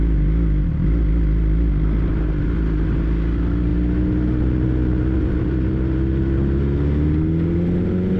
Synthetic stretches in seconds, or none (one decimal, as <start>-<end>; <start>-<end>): none